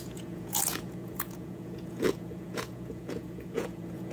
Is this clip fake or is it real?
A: fake